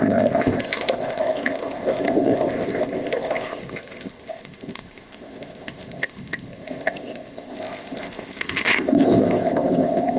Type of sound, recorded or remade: remade